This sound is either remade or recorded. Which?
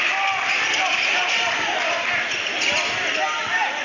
recorded